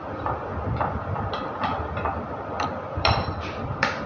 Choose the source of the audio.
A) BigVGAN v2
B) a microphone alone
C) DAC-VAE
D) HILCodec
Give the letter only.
A